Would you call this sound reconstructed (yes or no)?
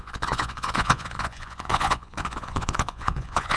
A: yes